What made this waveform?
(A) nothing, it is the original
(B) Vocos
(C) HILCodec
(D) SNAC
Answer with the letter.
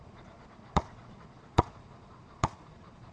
B